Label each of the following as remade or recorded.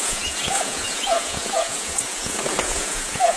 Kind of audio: remade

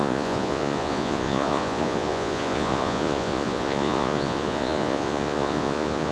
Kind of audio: remade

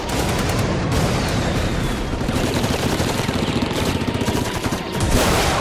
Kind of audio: remade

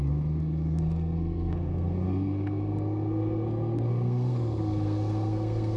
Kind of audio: remade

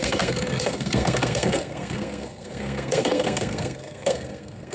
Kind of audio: remade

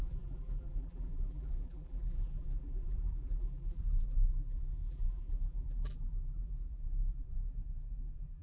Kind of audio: remade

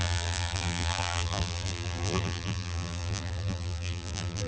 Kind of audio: remade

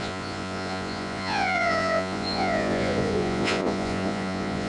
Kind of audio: remade